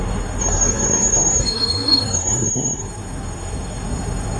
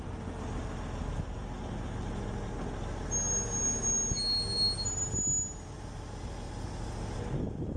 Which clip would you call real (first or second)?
second